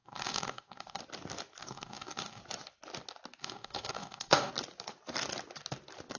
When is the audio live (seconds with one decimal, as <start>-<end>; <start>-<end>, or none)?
1.0-1.6; 2.4-3.4; 4.5-6.2

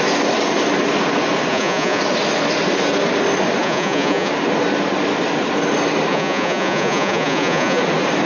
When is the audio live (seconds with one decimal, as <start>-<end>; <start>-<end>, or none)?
0.0-1.5; 2.0-3.6; 4.3-6.1; 7.8-8.3

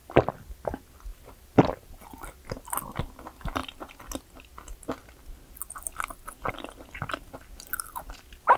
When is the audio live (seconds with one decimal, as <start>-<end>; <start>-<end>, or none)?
0.6-1.1; 1.9-8.6

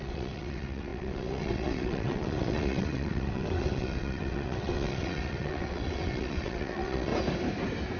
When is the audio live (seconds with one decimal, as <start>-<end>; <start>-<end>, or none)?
7.1-8.0

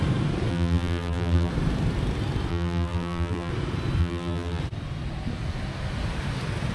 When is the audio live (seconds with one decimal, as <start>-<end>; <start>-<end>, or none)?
0.0-0.5; 1.5-2.5; 3.5-4.0; 4.6-6.7